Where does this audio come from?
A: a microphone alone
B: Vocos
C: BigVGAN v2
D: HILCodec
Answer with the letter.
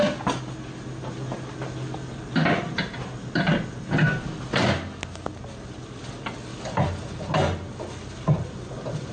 A